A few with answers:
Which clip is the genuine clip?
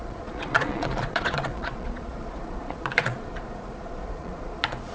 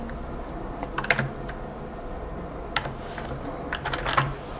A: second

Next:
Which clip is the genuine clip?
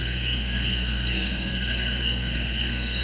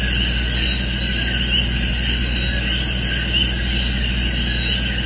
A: second